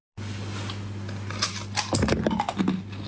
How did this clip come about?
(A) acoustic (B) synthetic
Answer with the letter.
A